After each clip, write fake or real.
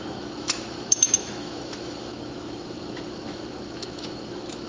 fake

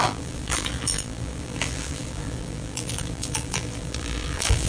fake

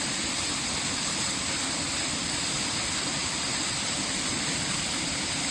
real